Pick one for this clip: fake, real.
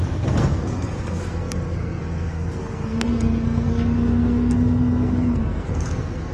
fake